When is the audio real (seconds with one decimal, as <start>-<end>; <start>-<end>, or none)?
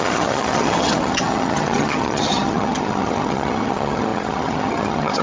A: none